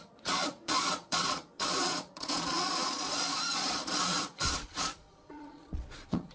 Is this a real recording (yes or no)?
no